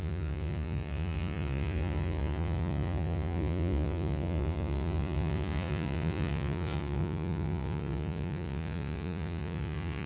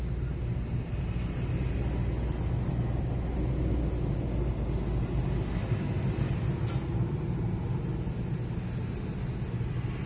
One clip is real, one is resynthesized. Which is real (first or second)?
second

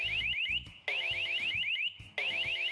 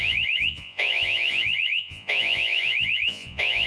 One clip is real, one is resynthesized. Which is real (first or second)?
first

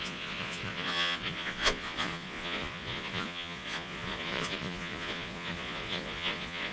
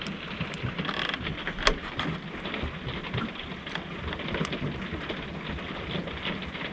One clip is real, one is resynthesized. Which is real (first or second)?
second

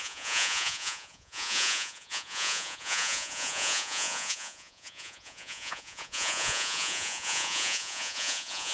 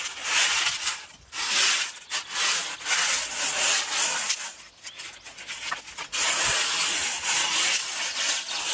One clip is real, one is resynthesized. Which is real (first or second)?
second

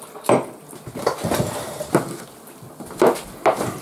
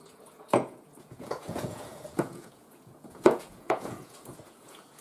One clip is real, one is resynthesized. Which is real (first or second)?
first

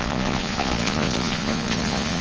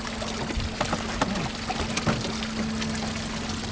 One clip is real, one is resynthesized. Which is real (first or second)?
second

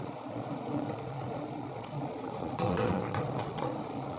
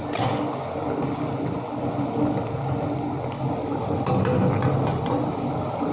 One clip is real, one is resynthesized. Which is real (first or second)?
second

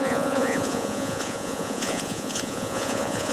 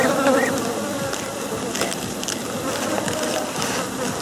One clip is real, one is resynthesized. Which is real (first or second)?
second